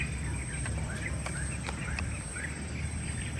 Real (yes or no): yes